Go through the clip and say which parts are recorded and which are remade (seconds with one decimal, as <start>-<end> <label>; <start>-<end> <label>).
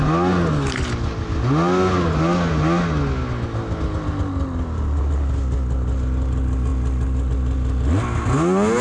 0.0-8.8 recorded